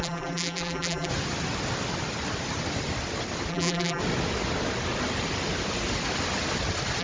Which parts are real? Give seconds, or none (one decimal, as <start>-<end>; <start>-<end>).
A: 1.1-3.5; 4.0-7.0